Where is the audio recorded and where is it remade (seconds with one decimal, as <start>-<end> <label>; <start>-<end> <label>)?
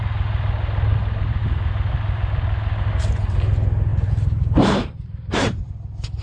0.0-3.9 recorded; 3.9-5.7 remade; 5.7-6.2 recorded